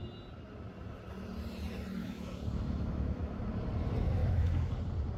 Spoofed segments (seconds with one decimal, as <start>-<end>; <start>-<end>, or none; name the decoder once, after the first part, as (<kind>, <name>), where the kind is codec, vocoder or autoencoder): 2.0-3.5 (autoencoder, DAC-VAE); 4.2-4.7